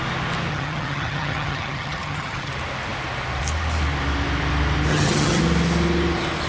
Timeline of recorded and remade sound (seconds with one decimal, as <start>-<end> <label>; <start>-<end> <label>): 0.0-0.5 recorded; 0.5-2.5 remade; 2.5-4.9 recorded; 4.9-5.4 remade; 5.4-6.5 recorded